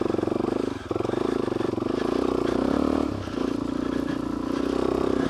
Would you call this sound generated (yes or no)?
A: no